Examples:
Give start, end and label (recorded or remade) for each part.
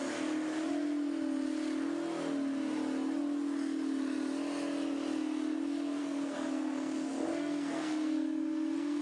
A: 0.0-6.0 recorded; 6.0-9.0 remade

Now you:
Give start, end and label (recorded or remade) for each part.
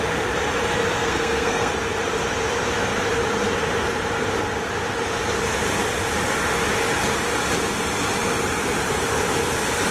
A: 0.0-1.0 recorded; 1.0-1.7 remade; 1.7-9.9 recorded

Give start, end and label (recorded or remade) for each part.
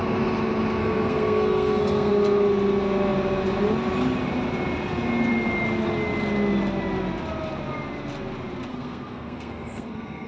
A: 0.0-0.8 recorded; 0.8-2.1 remade; 2.1-8.7 recorded; 8.7-10.3 remade